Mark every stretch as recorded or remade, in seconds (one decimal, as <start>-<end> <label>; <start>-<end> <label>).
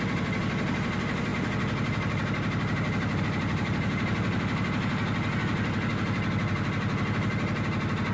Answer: 0.0-8.1 recorded